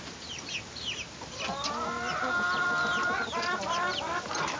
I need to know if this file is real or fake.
real